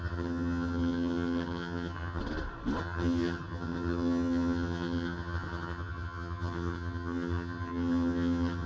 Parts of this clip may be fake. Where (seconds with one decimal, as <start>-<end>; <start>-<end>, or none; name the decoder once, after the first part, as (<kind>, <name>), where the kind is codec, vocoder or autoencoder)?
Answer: 0.0-2.2 (vocoder, HiFi-GAN); 2.8-8.7